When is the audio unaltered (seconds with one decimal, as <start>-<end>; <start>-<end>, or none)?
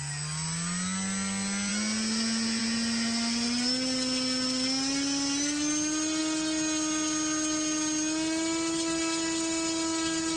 0.0-10.4